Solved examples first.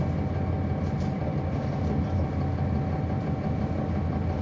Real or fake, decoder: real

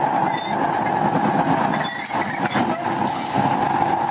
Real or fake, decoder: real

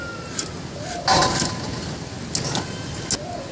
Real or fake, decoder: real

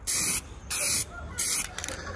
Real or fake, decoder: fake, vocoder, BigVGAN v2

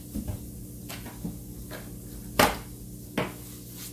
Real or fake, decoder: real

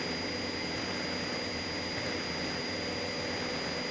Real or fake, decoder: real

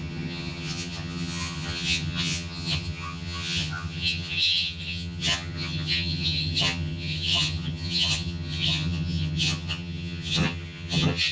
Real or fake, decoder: fake, vocoder, HiFi-GAN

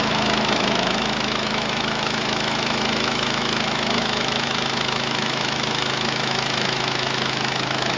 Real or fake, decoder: fake, autoencoder, DAC-VAE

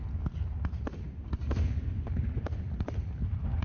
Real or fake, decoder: real